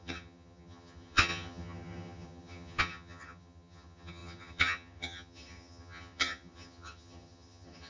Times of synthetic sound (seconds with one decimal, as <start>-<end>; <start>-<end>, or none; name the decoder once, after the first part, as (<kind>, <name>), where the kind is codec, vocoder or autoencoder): 0.0-7.9 (vocoder, HiFi-GAN)